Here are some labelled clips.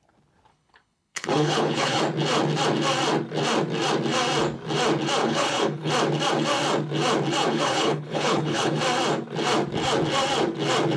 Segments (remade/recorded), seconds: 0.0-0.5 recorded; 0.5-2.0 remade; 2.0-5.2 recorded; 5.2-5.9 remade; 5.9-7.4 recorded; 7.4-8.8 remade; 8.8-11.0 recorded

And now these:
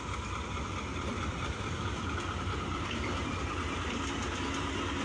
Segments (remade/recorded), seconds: 0.0-0.9 recorded; 0.9-3.9 remade; 3.9-5.0 recorded

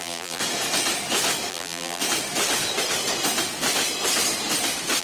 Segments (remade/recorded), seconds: 0.0-0.4 remade; 0.4-1.5 recorded; 1.5-2.0 remade; 2.0-5.0 recorded

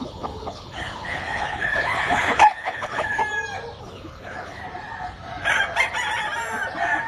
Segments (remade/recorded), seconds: 0.0-3.2 remade; 3.2-3.8 recorded; 3.8-4.6 remade; 4.6-7.1 recorded

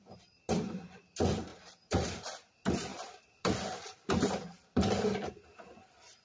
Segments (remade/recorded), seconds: 0.0-6.2 remade

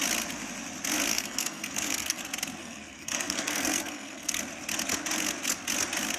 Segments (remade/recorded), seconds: 0.0-1.1 recorded; 1.1-2.2 remade; 2.2-2.6 recorded; 2.6-4.4 remade; 4.4-6.2 recorded

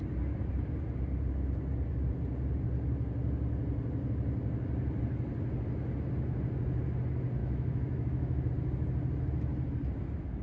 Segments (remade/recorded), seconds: 0.0-7.4 recorded; 7.4-8.5 remade; 8.5-10.4 recorded